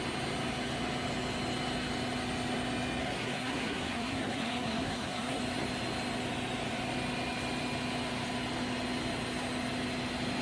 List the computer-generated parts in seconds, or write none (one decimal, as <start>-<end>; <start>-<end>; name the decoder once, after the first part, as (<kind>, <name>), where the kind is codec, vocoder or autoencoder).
3.0-5.4 (codec, SNAC)

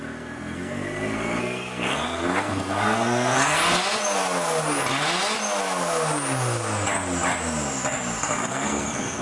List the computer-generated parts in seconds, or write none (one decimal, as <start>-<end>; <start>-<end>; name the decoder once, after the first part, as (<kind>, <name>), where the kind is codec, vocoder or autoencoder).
0.0-3.6 (codec, SNAC); 8.2-9.2

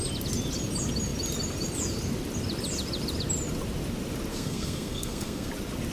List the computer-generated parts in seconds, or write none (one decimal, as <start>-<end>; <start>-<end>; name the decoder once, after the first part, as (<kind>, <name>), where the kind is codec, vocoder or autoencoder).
4.3-5.5 (codec, SNAC)

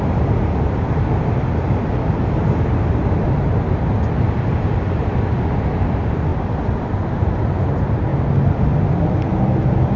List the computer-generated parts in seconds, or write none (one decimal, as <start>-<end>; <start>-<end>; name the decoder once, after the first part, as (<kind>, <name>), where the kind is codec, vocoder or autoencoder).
none

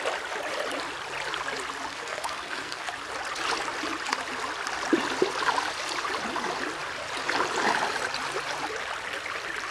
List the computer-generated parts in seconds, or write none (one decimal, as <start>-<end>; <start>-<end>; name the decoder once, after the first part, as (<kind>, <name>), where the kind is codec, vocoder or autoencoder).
1.9-2.9 (codec, SNAC)